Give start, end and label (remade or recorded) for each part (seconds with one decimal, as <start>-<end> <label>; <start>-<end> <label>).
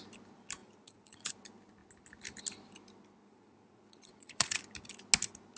0.0-0.6 recorded; 0.6-1.3 remade; 1.3-3.2 recorded; 3.2-4.6 remade; 4.6-5.6 recorded